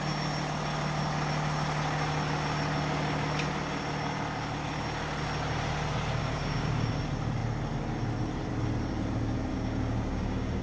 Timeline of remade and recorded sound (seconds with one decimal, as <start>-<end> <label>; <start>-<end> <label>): 0.0-6.2 recorded; 6.2-6.9 remade; 6.9-9.5 recorded; 9.5-10.6 remade